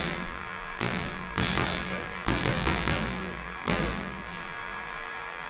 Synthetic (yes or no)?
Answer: yes